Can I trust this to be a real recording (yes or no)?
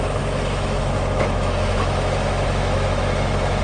no